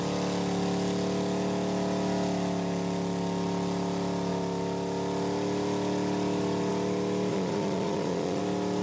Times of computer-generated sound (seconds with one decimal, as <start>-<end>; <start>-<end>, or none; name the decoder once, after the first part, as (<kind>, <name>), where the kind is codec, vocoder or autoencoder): 7.3-8.4 (vocoder, Vocos)